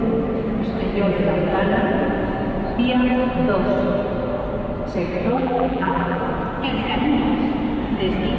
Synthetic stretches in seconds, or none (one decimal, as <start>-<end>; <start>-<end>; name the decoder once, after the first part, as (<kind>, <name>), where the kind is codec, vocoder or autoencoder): 5.3-6.2 (vocoder, BigVGAN v2)